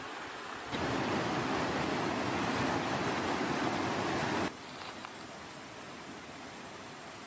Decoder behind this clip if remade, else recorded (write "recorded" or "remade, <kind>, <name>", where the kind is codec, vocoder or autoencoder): recorded